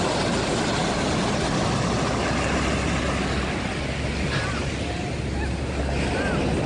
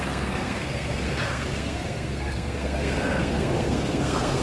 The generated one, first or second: second